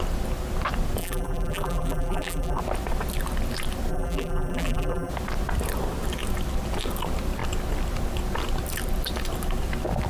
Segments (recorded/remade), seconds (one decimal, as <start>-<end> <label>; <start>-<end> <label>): 0.0-1.0 recorded; 1.0-2.6 remade; 2.6-3.9 recorded; 3.9-5.1 remade; 5.1-10.1 recorded